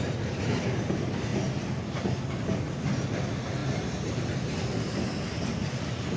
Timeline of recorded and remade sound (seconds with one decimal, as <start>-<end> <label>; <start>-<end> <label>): 0.0-1.3 recorded; 1.3-2.0 remade; 2.0-6.2 recorded